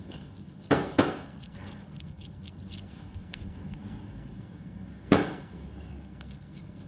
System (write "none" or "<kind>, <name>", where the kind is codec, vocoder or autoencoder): codec, SNAC